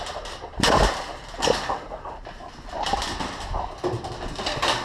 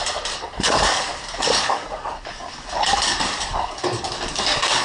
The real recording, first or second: first